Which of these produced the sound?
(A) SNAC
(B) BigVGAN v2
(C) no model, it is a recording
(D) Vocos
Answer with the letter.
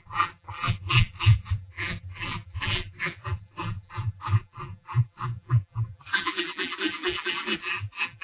B